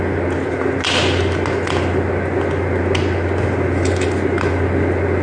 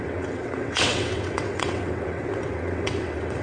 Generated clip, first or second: second